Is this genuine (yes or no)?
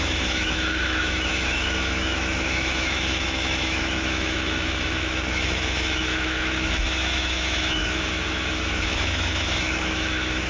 no